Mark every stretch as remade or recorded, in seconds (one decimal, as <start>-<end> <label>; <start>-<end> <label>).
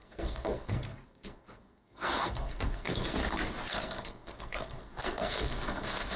0.0-3.2 remade; 3.2-3.7 recorded; 3.7-6.2 remade